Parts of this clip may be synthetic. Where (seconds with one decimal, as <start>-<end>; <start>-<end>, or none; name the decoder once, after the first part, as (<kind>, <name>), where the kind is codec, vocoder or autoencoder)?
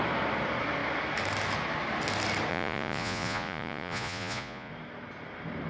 2.5-4.7 (vocoder, Vocos)